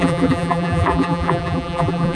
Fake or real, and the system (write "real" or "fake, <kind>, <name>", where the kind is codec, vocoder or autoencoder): fake, vocoder, BigVGAN v2